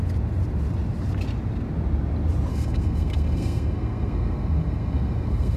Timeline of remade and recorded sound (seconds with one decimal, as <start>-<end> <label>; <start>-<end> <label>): 0.0-2.5 recorded; 2.5-5.6 remade